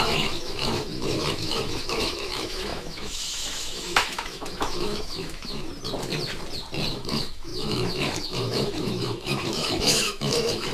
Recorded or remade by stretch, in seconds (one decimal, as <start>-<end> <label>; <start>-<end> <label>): 0.0-5.7 remade; 5.7-6.9 recorded; 6.9-10.7 remade